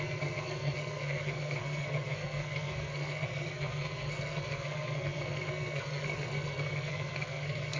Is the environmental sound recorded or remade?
remade